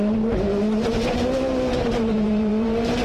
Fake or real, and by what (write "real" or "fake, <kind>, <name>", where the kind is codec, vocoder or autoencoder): fake, vocoder, BigVGAN v2